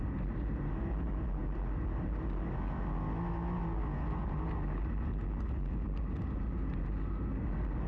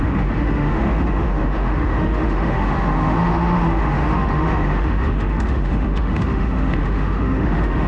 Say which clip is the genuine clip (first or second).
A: first